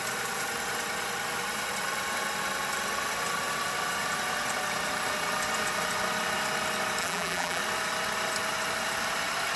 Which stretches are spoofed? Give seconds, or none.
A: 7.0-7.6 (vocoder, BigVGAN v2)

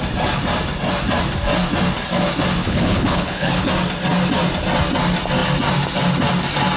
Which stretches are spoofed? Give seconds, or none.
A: 2.6-3.6 (codec, HILCodec)